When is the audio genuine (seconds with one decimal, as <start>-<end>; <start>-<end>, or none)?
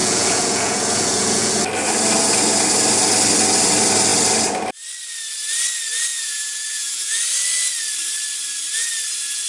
1.5-6.1; 7.2-9.5